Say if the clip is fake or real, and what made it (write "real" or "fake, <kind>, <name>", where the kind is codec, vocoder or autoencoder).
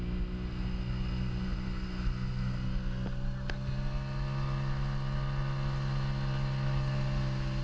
real